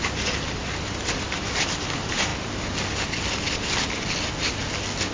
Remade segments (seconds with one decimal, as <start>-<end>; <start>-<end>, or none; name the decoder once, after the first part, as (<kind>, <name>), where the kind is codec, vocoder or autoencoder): none